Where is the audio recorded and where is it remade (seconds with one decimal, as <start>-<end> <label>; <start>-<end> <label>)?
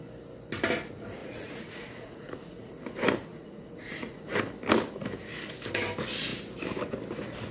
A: 0.0-1.2 recorded; 1.2-2.7 remade; 2.7-3.3 recorded; 3.3-4.3 remade; 4.3-7.5 recorded